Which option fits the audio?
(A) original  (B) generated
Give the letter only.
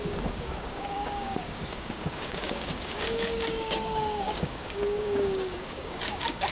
B